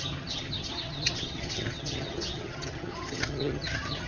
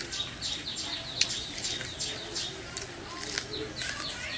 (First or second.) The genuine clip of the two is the second